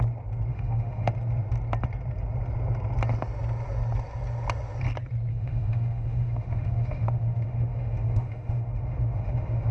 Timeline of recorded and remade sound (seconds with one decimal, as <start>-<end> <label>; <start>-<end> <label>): 0.0-0.5 recorded; 0.5-1.1 remade; 1.1-5.3 recorded; 5.3-9.7 remade